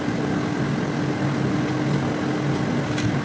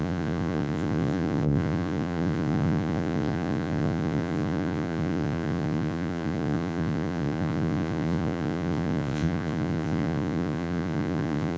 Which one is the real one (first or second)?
first